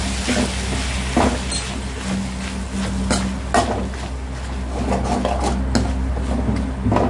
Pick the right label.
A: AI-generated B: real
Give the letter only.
B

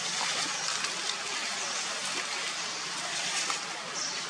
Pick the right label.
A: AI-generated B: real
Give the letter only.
B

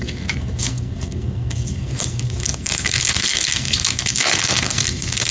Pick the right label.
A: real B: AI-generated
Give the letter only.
B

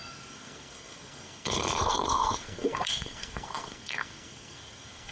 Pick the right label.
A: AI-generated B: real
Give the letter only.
A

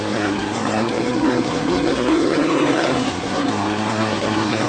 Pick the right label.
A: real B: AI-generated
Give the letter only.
B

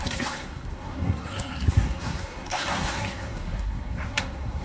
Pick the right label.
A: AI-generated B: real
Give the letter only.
A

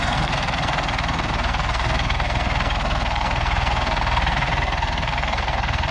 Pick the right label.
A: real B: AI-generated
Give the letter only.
B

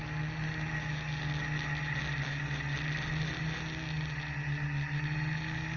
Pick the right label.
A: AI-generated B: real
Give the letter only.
B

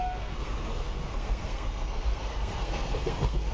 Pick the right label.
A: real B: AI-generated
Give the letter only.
B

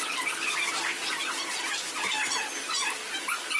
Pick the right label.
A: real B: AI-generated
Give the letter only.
A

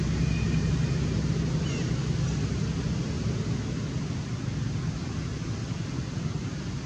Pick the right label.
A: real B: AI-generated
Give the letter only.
A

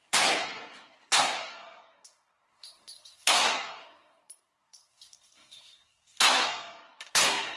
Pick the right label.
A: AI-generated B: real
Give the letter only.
A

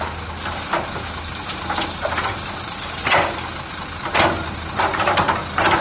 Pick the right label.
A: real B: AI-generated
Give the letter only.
A